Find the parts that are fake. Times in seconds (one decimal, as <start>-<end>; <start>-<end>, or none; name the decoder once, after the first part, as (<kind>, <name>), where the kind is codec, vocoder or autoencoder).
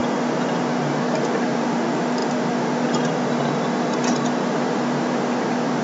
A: none